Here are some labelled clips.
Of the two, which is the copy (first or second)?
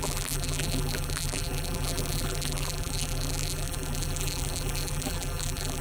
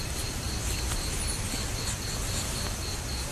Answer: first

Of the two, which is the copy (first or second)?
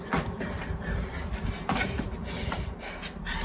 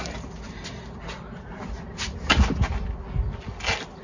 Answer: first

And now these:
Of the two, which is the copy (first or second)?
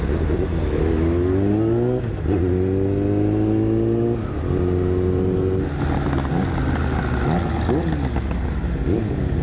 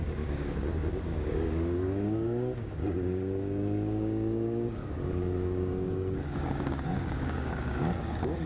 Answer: second